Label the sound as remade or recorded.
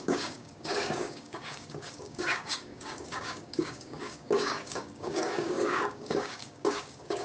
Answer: remade